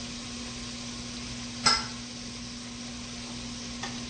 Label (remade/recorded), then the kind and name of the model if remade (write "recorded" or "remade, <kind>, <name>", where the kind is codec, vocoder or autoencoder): recorded